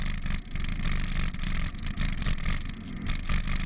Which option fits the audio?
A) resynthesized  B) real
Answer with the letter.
B